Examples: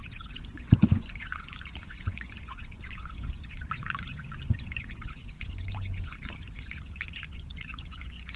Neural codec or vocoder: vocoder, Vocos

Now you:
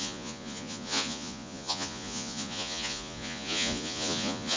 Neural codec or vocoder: vocoder, Vocos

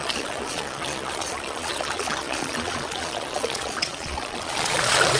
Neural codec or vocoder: vocoder, Vocos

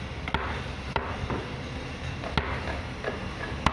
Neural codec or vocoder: none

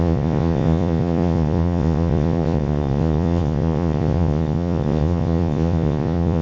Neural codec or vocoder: vocoder, Vocos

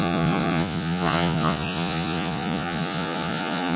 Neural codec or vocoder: vocoder, Vocos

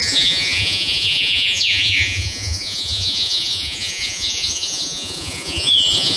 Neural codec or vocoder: vocoder, Vocos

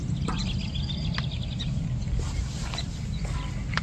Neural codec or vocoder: none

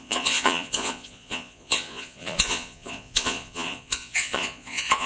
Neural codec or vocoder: vocoder, Vocos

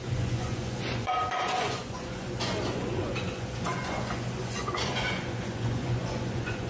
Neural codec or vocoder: vocoder, Vocos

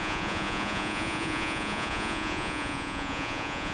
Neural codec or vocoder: vocoder, Vocos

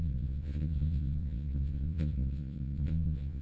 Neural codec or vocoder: vocoder, Vocos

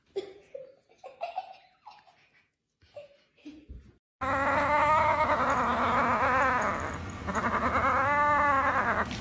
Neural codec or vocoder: none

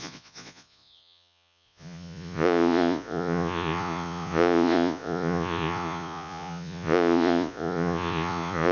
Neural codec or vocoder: vocoder, Vocos